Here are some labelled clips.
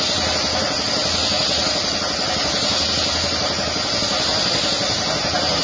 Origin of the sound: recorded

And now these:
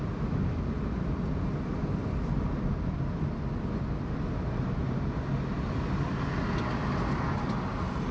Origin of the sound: recorded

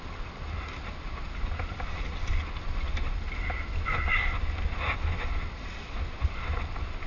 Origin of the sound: recorded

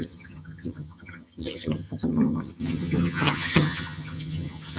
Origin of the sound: remade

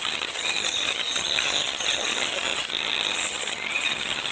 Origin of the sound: remade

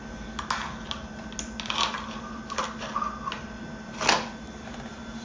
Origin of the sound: recorded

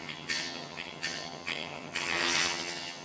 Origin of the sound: remade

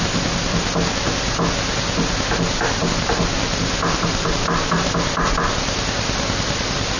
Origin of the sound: recorded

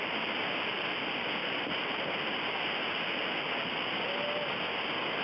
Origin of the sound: recorded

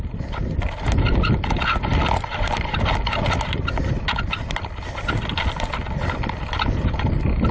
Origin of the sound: recorded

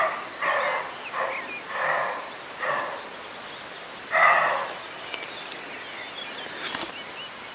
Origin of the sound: recorded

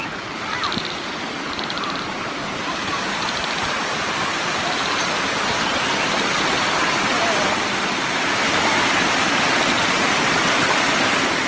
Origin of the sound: recorded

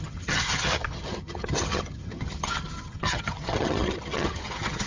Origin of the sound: remade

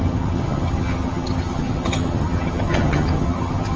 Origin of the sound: remade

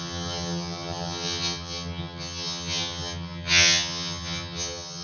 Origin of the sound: remade